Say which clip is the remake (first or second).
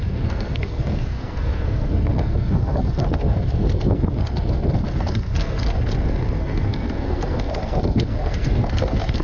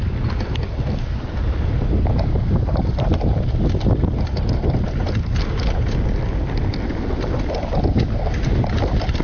first